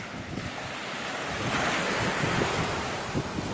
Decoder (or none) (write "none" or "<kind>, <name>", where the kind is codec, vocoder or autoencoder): none